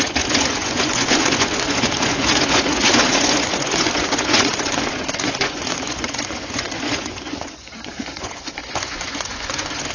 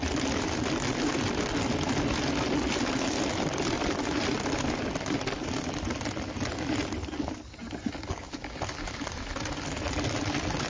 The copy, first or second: first